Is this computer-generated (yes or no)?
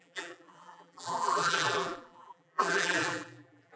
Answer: yes